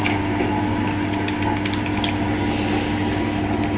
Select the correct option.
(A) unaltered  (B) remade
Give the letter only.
A